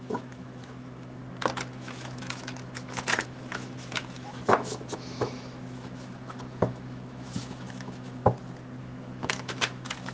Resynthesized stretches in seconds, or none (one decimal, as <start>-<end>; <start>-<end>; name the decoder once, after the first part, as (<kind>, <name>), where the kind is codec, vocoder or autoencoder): 0.0-1.2 (autoencoder, DAC-VAE); 1.7-8.2; 8.8-10.1